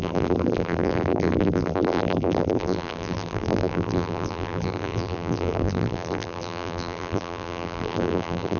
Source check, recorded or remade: remade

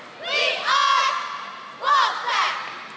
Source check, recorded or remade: recorded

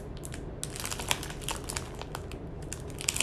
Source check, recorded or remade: recorded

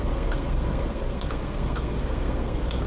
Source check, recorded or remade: remade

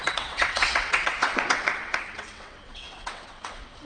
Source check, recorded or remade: remade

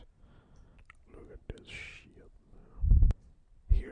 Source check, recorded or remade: recorded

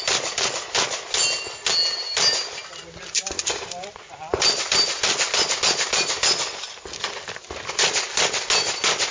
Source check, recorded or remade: recorded